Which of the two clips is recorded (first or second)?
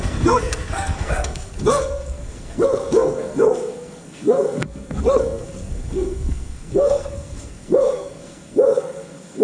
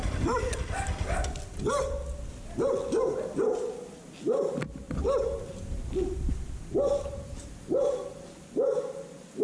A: second